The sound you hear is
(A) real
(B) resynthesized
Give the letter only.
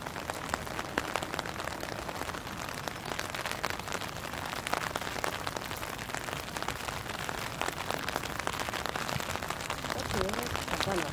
A